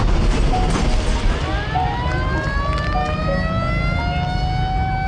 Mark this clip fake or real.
real